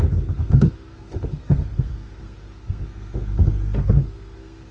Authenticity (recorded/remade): remade